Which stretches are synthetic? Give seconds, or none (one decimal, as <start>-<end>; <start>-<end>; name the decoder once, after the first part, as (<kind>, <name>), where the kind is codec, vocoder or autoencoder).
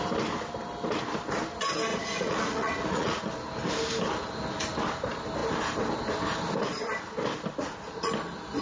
1.9-3.2 (vocoder, Vocos); 7.6-8.1